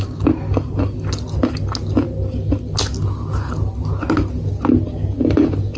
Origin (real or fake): real